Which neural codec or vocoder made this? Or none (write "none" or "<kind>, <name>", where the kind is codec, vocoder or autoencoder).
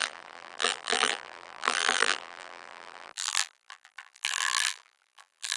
vocoder, BigVGAN v2